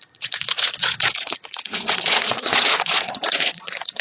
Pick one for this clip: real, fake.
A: fake